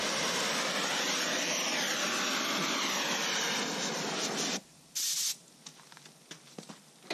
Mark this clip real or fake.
real